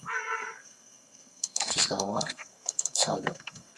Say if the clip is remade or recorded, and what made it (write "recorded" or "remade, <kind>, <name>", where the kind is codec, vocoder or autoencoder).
remade, codec, SNAC